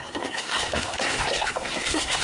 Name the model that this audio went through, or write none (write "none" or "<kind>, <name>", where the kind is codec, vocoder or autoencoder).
codec, SNAC